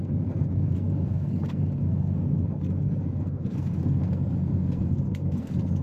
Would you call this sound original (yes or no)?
no